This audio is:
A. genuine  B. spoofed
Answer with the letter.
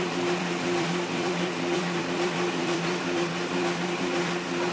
B